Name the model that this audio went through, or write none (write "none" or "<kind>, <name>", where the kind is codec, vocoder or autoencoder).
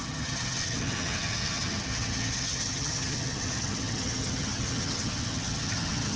vocoder, HiFi-GAN